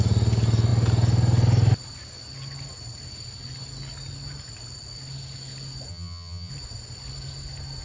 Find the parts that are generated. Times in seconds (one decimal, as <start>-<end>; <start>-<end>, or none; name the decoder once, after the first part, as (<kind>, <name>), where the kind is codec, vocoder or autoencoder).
5.9-6.5 (vocoder, HiFi-GAN)